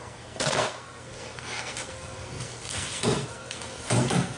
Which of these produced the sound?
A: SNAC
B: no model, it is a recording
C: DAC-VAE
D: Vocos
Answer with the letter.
A